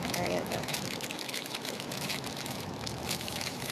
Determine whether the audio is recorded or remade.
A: remade